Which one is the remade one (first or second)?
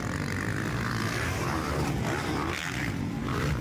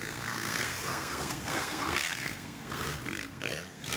second